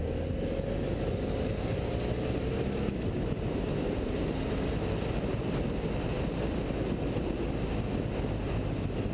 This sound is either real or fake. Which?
real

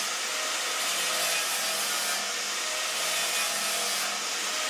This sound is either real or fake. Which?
real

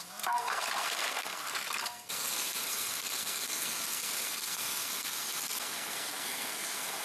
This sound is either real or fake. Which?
fake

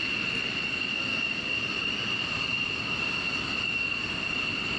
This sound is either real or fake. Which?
real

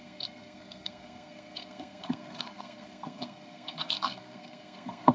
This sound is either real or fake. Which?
fake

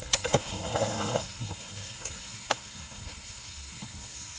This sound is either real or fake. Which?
fake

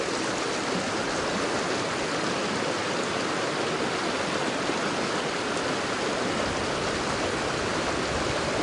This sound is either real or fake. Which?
real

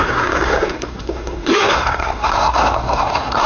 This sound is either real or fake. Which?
fake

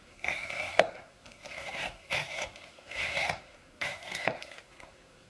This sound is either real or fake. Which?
fake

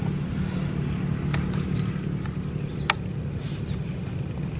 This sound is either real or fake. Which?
real